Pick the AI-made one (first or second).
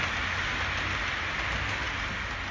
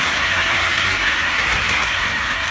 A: second